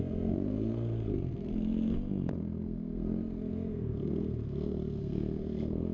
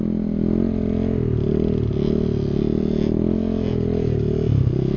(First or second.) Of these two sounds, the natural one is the second